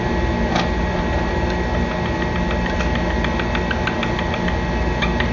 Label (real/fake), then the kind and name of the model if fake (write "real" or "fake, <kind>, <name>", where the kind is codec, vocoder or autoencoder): real